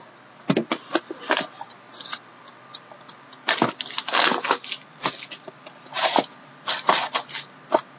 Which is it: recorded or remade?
recorded